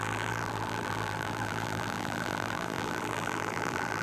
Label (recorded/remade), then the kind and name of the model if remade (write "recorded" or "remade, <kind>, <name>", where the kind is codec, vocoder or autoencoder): remade, vocoder, BigVGAN v2